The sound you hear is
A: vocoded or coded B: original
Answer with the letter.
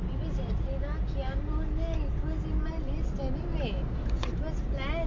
B